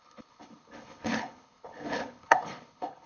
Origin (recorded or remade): remade